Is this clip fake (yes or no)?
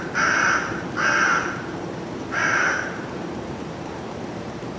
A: yes